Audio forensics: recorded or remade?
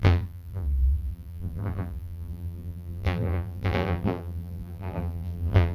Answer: remade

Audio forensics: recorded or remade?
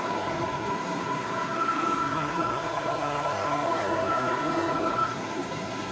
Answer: remade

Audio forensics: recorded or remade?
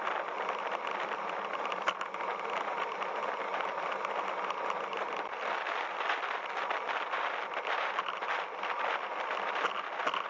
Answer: recorded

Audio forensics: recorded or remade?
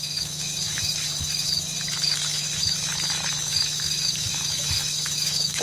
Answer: remade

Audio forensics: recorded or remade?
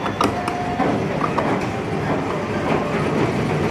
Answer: recorded